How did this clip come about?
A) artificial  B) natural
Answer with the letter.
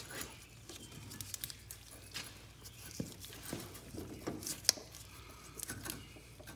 B